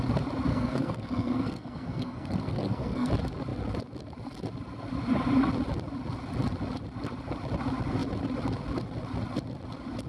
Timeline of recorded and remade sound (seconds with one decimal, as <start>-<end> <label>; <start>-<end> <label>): 0.0-0.5 recorded; 0.5-3.1 remade; 3.1-10.1 recorded